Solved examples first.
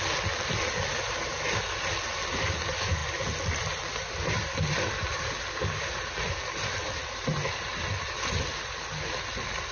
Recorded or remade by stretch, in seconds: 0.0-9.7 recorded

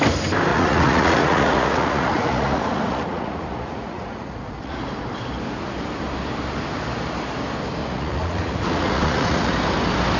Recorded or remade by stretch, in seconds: 0.0-0.5 recorded; 0.5-4.8 remade; 4.8-7.8 recorded; 7.8-9.5 remade; 9.5-10.2 recorded